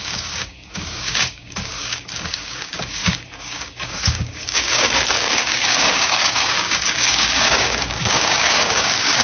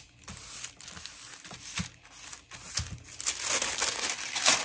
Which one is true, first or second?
second